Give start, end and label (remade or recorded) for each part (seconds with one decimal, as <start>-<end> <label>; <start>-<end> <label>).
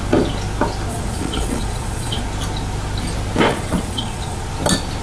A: 0.0-0.9 recorded; 0.9-2.2 remade; 2.2-3.5 recorded; 3.5-4.4 remade; 4.4-5.0 recorded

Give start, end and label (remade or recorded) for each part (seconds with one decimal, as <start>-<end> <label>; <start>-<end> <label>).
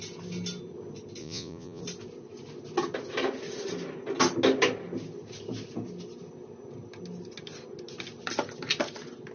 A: 0.0-1.2 recorded; 1.2-1.8 remade; 1.8-9.3 recorded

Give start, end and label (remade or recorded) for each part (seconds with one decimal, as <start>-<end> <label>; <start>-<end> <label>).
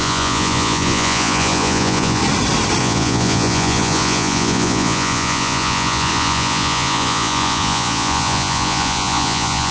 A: 0.0-2.2 remade; 2.2-2.8 recorded; 2.8-9.7 remade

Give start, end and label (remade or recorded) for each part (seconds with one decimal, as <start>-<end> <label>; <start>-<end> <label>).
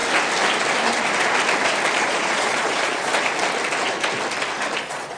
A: 0.0-2.0 recorded; 2.0-3.1 remade; 3.1-4.8 recorded; 4.8-5.2 remade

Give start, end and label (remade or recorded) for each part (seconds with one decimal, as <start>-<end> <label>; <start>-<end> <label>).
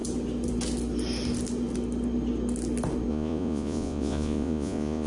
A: 0.0-3.1 recorded; 3.1-5.1 remade